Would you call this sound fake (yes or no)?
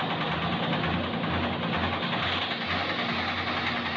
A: no